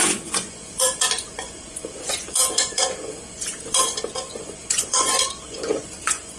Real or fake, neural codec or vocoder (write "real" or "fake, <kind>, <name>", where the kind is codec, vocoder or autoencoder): fake, vocoder, Vocos